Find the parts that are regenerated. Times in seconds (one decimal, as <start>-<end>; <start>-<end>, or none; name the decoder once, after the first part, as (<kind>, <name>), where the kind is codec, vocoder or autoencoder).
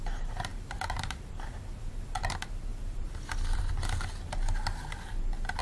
0.5-2.3 (vocoder, BigVGAN v2); 2.7-3.7